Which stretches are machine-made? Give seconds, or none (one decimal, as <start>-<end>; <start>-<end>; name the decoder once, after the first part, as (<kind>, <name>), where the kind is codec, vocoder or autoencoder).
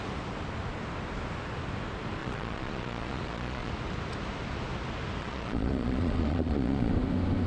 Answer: 2.2-3.7 (vocoder, Vocos); 5.2-6.9